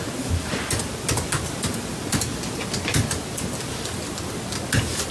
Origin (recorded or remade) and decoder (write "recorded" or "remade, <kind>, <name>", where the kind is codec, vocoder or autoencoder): recorded